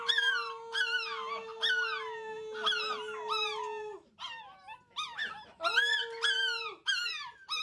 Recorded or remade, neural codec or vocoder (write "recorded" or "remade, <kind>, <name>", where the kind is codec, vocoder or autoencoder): recorded